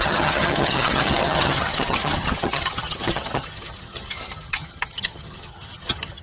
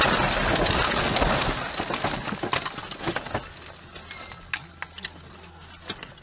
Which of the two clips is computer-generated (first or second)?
first